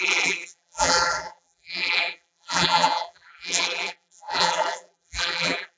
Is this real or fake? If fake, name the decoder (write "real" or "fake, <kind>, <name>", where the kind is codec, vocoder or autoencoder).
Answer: fake, vocoder, BigVGAN v2